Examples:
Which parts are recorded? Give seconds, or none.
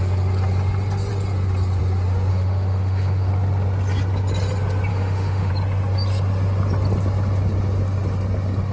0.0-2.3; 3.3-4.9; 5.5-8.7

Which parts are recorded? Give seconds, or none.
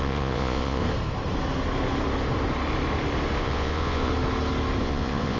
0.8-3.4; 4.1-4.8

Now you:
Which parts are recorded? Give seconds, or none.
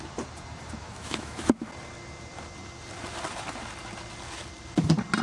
0.0-0.8; 1.7-5.2